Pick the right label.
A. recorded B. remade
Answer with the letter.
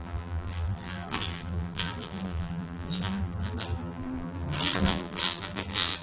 B